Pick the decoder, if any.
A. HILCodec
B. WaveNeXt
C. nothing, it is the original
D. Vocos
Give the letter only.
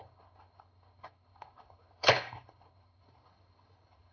A